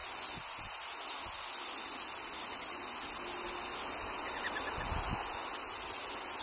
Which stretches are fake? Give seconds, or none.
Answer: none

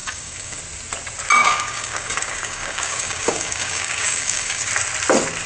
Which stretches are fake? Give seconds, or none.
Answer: 0.0-0.6 (codec, DAC); 1.4-4.7

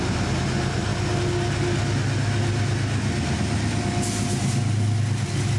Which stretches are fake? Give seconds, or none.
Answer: none

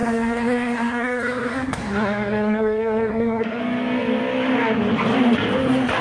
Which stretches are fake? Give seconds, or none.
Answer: 0.0-3.6 (codec, SNAC)

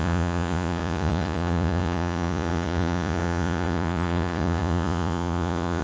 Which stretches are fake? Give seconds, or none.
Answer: 0.0-5.8 (vocoder, Vocos)

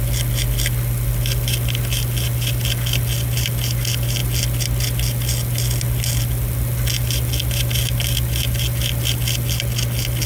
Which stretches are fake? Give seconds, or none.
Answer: none